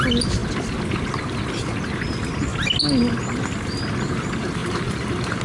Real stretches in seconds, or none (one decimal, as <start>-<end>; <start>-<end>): 0.0-4.6